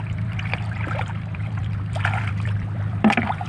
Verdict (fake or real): fake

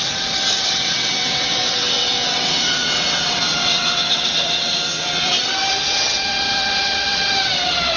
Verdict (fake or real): fake